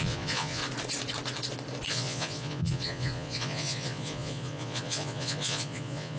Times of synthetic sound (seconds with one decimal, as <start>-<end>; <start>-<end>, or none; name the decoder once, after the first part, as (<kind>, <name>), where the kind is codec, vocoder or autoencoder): 0.0-0.6 (vocoder, Vocos); 1.9-6.2